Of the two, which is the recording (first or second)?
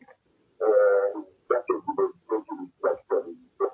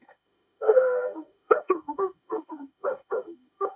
first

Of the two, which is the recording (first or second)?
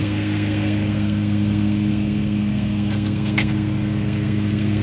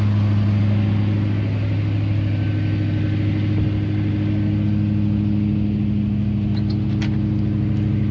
second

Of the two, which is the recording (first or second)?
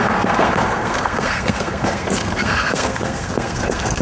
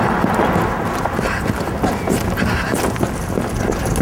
second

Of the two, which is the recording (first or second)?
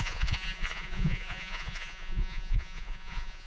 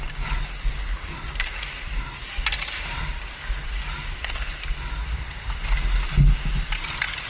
second